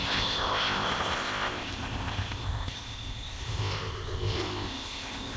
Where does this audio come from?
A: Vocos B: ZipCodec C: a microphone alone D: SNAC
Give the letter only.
B